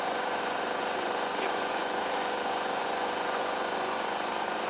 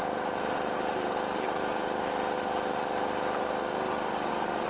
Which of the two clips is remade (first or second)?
first